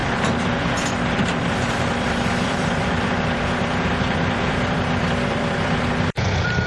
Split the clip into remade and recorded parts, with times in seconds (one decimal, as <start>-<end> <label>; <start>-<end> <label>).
0.0-1.7 recorded; 1.7-6.7 remade